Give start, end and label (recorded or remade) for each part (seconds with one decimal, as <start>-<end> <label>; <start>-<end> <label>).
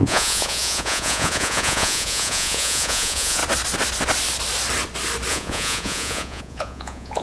0.0-3.4 remade; 3.4-5.3 recorded; 5.3-7.2 remade